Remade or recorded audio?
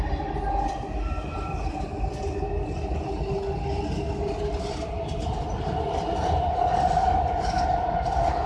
recorded